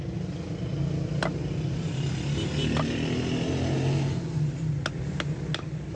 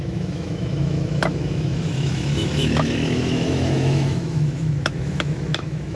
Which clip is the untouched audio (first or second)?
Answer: first